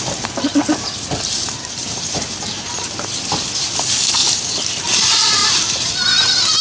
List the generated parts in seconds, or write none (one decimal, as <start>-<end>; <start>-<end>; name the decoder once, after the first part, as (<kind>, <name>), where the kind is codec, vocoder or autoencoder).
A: 0.5-2.7 (vocoder, BigVGAN v2); 4.2-4.8; 5.4-5.9